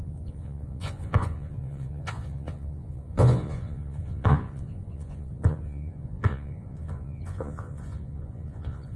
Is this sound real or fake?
fake